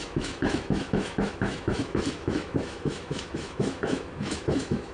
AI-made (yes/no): yes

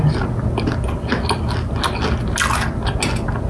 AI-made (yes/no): no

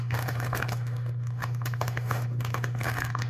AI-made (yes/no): yes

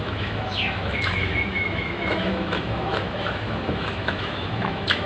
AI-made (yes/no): yes